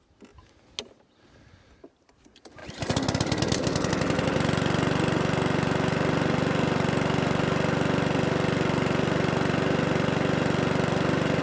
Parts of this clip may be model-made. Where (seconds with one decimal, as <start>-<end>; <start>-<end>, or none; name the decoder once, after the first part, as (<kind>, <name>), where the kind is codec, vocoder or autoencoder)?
none